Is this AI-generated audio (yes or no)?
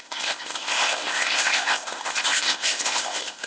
yes